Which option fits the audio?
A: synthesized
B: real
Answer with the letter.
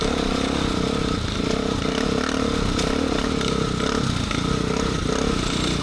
B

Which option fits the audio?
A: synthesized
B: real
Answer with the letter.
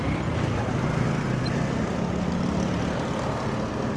B